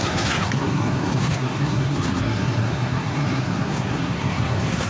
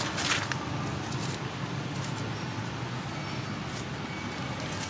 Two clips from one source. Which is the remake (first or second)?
first